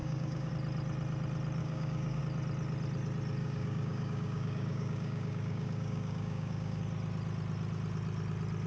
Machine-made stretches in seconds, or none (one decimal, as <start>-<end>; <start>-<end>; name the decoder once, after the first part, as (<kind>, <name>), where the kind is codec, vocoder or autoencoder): 0.0-0.5 (codec, DAC); 1.6-2.2; 3.4-6.8